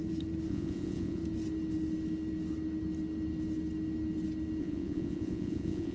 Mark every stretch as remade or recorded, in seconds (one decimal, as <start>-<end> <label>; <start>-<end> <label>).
0.0-0.5 recorded; 0.5-1.2 remade; 1.2-4.6 recorded; 4.6-5.9 remade